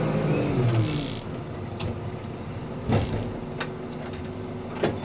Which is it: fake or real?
real